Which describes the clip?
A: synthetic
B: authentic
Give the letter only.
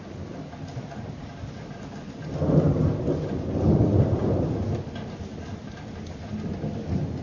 B